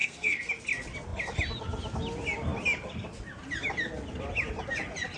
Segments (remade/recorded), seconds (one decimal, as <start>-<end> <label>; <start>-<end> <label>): 0.0-0.5 remade; 0.5-5.2 recorded